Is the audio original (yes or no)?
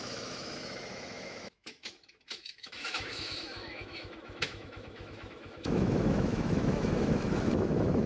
no